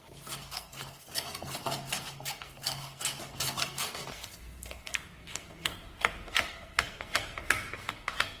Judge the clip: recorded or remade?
remade